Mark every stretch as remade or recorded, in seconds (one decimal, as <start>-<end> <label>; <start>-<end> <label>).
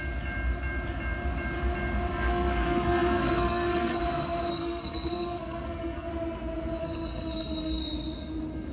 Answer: 0.0-2.1 recorded; 2.1-4.0 remade; 4.0-4.5 recorded; 4.5-6.1 remade; 6.1-6.8 recorded; 6.8-7.8 remade; 7.8-8.7 recorded